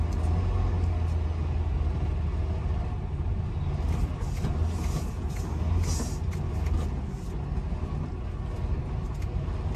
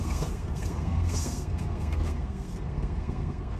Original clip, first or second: first